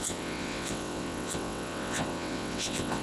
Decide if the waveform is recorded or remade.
remade